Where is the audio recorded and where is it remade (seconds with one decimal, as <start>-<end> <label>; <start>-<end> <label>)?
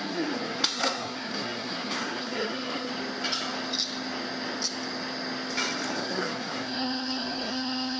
0.0-2.9 remade; 2.9-5.9 recorded; 5.9-8.0 remade